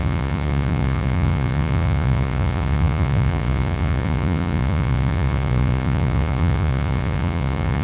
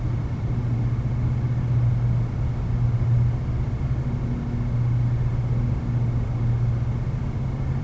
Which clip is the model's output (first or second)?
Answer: first